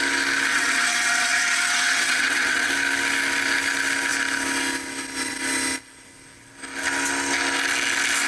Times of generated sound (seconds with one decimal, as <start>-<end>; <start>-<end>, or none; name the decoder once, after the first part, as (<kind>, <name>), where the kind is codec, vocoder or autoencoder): 0.5-2.7 (vocoder, WaveNeXt)